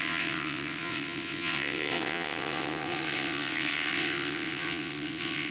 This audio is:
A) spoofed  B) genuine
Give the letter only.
A